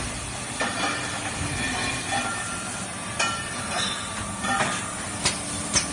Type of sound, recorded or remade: recorded